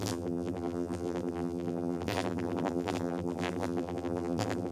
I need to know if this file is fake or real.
fake